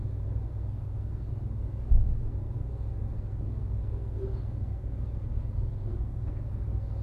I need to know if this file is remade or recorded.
remade